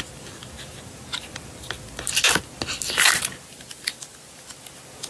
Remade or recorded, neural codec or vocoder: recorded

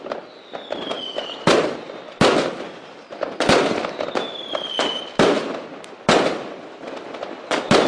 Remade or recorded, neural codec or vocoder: recorded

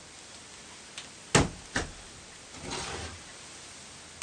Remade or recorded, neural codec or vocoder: recorded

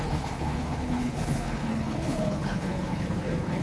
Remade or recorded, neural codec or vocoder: remade, codec, HILCodec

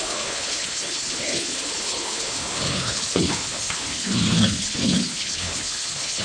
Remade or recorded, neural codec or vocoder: remade, codec, HILCodec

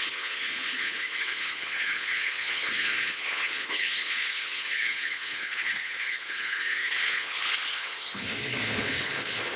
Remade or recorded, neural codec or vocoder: remade, codec, HILCodec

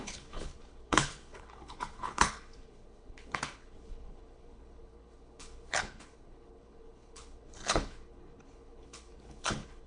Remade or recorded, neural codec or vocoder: remade, codec, HILCodec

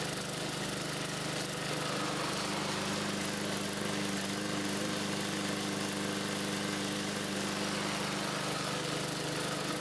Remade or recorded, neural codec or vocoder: recorded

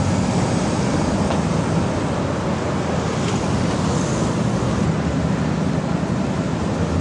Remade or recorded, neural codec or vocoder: recorded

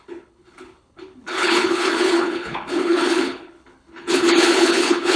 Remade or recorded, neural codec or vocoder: remade, codec, HILCodec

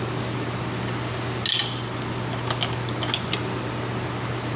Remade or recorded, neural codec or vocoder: recorded